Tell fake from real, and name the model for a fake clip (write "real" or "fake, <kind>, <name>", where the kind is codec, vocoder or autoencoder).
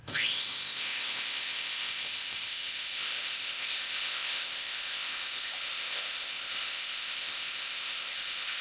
fake, codec, ZipCodec